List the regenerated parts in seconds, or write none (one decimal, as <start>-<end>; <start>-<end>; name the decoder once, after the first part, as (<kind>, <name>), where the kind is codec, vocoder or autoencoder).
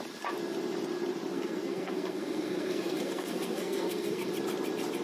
1.3-4.3 (codec, SNAC)